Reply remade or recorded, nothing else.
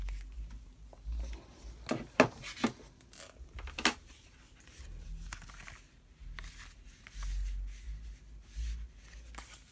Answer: recorded